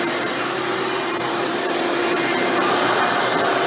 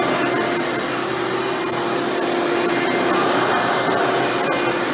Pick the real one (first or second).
second